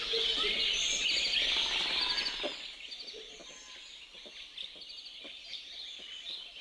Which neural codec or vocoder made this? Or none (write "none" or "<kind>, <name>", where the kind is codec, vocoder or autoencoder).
none